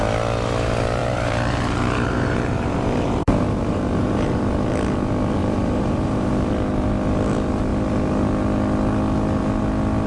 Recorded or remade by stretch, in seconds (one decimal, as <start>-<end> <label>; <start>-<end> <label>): 0.0-1.0 recorded; 1.0-4.4 remade; 4.4-5.4 recorded; 5.4-6.3 remade; 6.3-10.1 recorded